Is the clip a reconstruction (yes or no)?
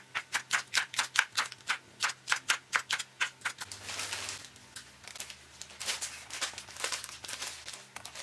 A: no